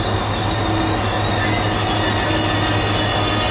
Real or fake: real